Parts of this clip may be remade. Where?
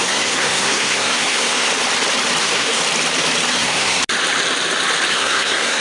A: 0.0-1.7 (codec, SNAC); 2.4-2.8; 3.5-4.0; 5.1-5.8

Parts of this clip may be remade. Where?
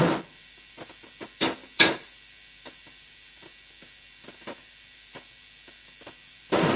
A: none